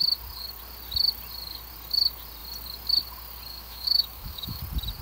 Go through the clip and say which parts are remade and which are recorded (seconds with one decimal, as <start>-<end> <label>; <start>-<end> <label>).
0.0-3.5 recorded; 3.5-4.6 remade; 4.6-5.0 recorded